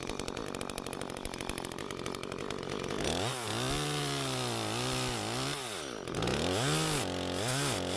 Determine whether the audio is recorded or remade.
recorded